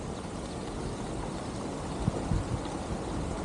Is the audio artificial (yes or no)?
no